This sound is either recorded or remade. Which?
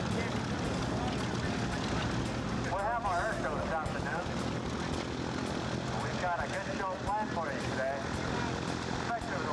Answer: recorded